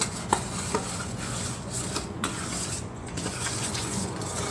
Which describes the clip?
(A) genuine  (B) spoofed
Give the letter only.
B